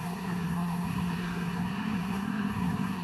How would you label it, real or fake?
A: fake